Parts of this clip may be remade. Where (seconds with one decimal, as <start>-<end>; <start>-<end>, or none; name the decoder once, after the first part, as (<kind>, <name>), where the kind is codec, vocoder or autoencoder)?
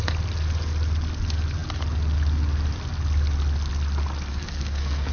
4.3-5.1 (codec, SNAC)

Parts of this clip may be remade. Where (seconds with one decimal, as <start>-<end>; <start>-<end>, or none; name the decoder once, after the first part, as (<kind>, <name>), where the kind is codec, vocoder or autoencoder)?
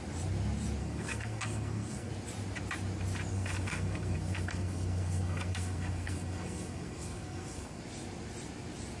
0.8-2.1 (codec, SNAC); 3.3-7.8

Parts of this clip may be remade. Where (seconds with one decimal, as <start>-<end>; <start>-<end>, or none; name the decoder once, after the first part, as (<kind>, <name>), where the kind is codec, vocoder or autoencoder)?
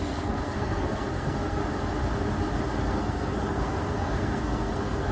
0.0-1.6 (codec, SNAC); 2.8-5.1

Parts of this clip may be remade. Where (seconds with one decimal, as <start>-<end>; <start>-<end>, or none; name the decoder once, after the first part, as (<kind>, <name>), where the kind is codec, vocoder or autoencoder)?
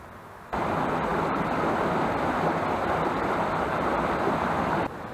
none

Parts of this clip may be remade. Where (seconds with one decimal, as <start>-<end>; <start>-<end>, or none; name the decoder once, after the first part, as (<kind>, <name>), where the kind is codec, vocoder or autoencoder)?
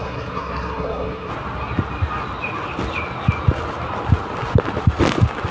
0.0-1.3 (codec, SNAC)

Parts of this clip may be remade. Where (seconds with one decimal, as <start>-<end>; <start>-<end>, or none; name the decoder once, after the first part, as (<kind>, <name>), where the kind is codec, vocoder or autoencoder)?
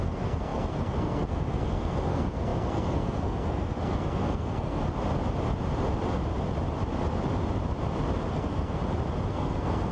0.0-4.8 (codec, SNAC); 8.3-8.8; 9.3-9.9